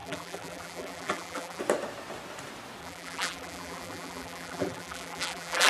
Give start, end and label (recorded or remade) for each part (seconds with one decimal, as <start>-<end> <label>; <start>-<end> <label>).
0.0-1.6 remade; 1.6-2.8 recorded; 2.8-5.7 remade